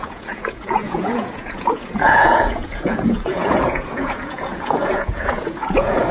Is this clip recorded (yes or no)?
no